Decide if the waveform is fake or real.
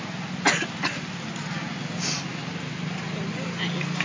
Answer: real